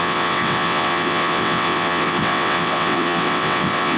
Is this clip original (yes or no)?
no